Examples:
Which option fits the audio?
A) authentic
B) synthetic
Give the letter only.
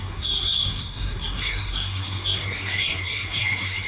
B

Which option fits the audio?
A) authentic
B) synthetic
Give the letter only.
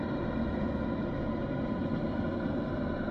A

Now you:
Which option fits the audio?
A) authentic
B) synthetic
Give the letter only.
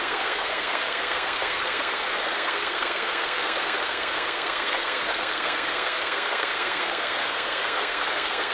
B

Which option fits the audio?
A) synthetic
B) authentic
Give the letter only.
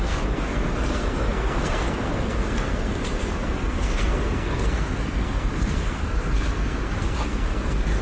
A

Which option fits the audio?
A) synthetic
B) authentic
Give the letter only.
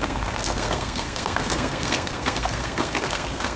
A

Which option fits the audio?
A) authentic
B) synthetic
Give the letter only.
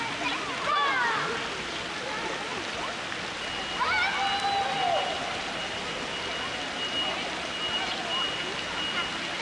A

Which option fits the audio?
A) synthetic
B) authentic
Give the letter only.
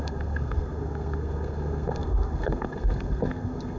A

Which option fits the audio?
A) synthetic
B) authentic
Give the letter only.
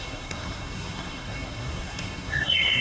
A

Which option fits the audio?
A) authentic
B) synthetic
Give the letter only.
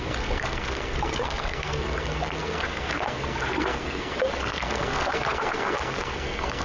B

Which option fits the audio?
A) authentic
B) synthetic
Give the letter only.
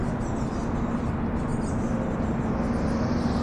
A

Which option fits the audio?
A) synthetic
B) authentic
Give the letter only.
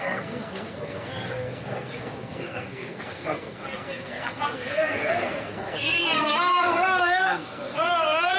A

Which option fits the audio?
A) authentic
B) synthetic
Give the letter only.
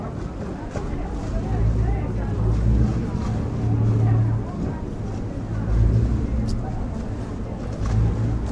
A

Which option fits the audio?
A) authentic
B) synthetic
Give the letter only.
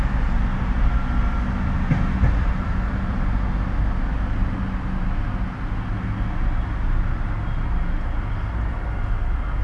A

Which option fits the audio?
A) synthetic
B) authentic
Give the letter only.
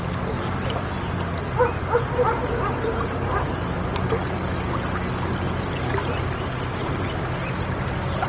B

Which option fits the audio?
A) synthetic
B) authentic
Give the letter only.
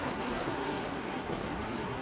A